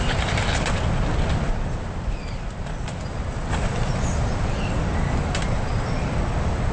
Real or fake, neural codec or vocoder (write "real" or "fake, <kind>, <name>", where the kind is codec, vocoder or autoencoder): real